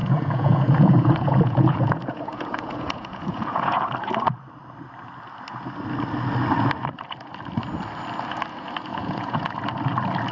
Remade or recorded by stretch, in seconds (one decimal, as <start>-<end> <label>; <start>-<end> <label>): 0.0-3.8 remade; 3.8-8.9 recorded; 8.9-9.5 remade; 9.5-10.3 recorded